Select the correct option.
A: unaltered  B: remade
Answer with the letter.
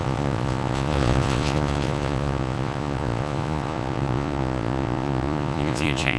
B